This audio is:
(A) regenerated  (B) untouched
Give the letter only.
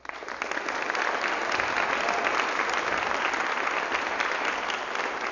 B